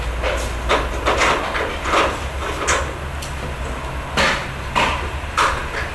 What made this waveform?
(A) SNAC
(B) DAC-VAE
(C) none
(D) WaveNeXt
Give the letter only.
C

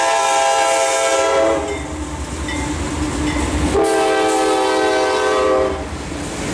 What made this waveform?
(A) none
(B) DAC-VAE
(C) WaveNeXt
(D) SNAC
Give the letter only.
A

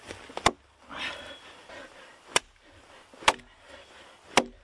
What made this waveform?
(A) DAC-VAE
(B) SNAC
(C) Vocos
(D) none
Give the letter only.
D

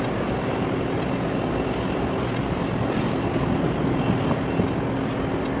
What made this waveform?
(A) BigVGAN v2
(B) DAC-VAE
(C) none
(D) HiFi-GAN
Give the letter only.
C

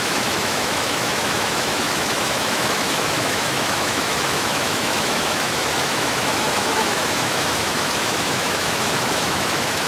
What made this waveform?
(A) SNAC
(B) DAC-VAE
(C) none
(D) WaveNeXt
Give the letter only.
B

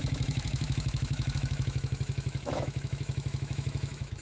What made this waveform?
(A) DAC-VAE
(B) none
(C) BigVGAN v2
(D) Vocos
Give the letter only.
A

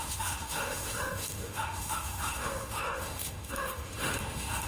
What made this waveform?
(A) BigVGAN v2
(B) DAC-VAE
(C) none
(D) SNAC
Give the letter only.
B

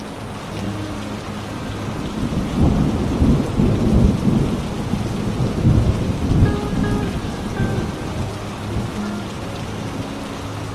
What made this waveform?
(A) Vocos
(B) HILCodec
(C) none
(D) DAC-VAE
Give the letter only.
C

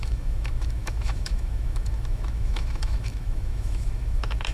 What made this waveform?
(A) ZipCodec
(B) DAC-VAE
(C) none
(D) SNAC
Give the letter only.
B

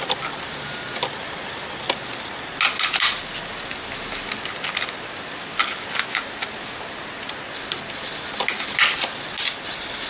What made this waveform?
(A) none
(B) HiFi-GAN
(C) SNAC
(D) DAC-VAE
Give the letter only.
A